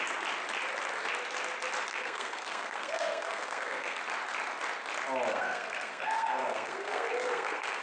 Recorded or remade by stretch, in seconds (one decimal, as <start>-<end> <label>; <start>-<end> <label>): 0.0-1.9 recorded; 1.9-4.0 remade; 4.0-5.3 recorded; 5.3-7.8 remade